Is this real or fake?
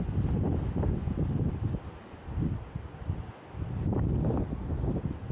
real